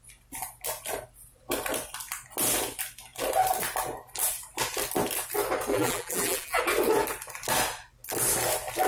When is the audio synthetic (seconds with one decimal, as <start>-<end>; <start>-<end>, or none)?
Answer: 5.7-6.6